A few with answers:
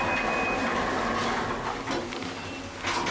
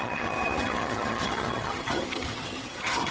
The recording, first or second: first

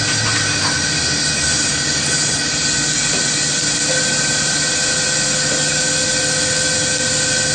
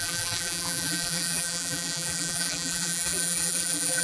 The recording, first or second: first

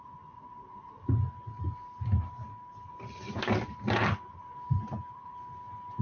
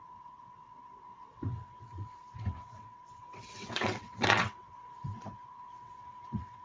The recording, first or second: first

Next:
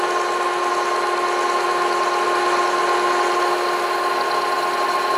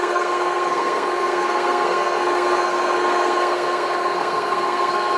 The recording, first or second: first